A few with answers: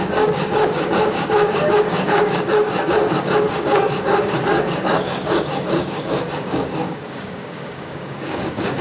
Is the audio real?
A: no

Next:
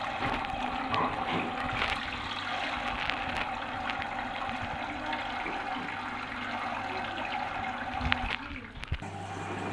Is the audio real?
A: yes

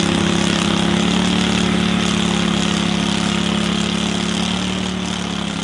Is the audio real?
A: yes